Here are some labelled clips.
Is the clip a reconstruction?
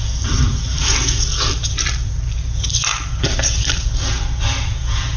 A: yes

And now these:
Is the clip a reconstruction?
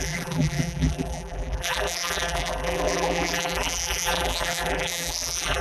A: yes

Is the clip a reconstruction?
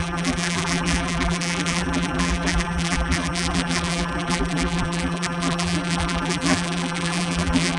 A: yes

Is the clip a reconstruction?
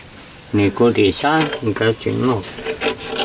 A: no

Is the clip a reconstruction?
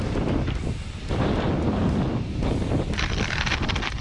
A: yes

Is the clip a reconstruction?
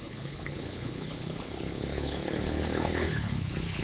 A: yes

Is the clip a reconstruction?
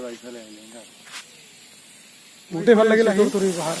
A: no